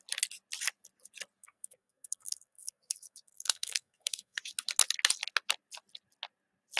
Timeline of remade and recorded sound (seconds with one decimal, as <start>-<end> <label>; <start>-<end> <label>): 0.0-1.4 recorded; 1.4-4.4 remade; 4.4-6.8 recorded